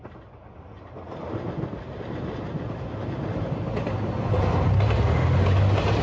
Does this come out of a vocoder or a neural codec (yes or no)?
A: no